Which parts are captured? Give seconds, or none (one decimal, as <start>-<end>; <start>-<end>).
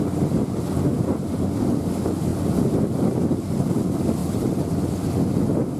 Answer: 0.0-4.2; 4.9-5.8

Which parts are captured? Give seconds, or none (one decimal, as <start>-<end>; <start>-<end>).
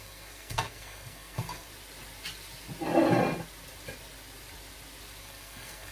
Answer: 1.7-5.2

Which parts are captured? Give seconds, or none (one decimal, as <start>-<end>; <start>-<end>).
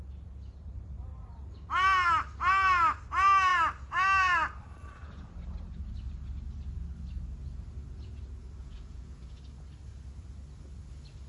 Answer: 0.0-8.6; 9.4-11.3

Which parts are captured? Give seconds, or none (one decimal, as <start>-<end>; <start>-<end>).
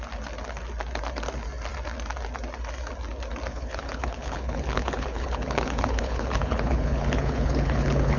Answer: 0.0-3.5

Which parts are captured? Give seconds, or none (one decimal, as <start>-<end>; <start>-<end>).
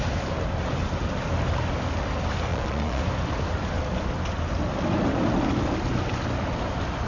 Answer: 0.0-2.5; 3.0-7.1